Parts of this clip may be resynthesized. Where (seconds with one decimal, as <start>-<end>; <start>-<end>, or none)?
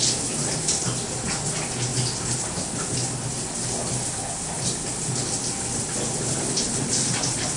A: none